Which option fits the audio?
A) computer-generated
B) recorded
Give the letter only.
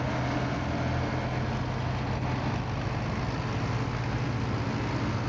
B